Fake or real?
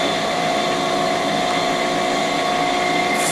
real